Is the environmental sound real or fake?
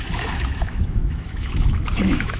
fake